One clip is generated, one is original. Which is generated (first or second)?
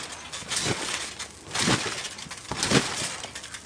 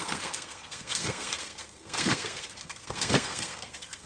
second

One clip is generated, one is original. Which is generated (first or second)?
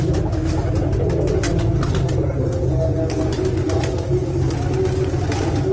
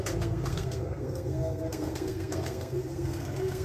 second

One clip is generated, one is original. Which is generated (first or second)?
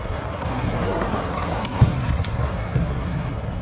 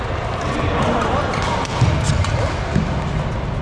first